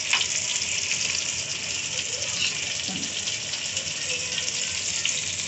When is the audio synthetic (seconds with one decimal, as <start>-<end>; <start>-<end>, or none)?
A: none